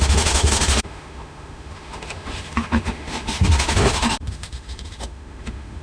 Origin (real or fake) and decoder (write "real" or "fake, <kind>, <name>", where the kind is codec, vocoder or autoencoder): fake, autoencoder, DAC-VAE